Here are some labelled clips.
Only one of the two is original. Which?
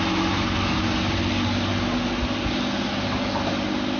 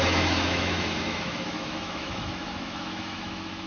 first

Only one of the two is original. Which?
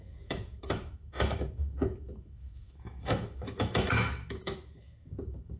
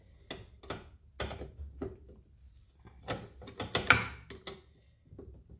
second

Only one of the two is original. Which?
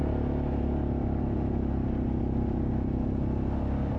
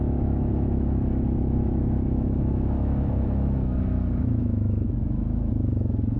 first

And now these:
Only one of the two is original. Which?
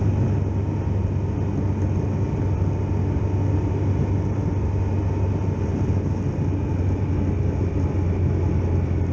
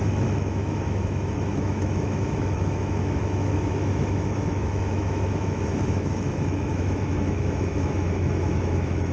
first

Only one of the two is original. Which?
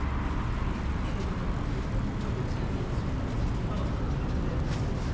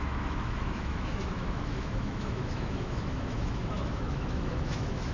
first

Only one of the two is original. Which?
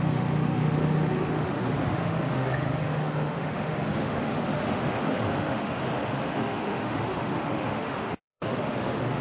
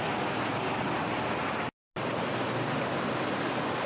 second